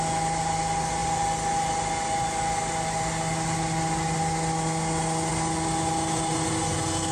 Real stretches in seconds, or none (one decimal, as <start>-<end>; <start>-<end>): 0.0-7.1